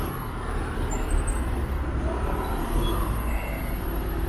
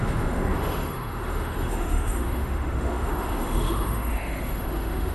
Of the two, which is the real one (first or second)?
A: first